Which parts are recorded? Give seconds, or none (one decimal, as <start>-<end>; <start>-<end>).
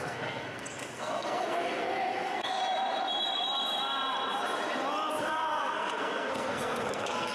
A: 2.6-5.1